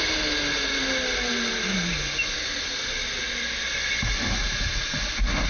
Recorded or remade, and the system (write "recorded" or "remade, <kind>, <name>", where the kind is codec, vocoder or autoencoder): recorded